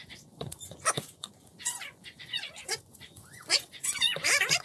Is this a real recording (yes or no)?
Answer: no